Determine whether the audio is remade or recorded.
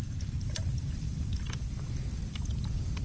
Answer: remade